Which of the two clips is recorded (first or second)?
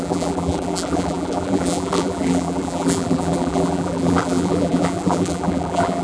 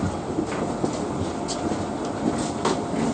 second